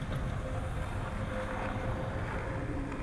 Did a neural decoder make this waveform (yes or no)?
no